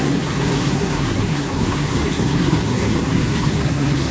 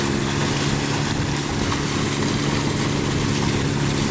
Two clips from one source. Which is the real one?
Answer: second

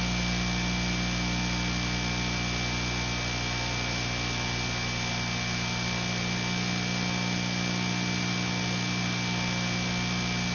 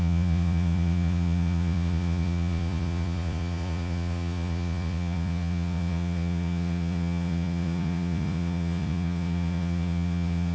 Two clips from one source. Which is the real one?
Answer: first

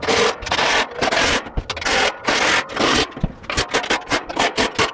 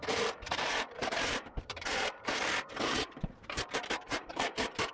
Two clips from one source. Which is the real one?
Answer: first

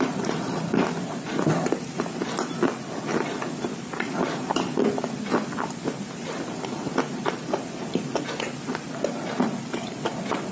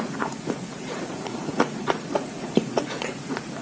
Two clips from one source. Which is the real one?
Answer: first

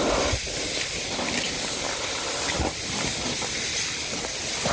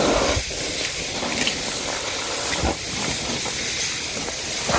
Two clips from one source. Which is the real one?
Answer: second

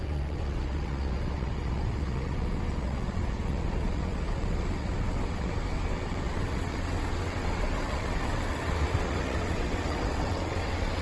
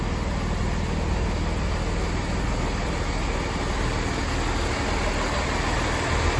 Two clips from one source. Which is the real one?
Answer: second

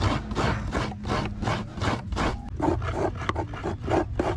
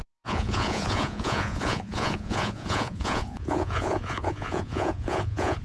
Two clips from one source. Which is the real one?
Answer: first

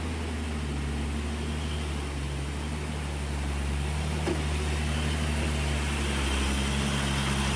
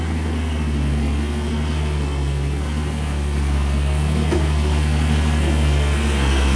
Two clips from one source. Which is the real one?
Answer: first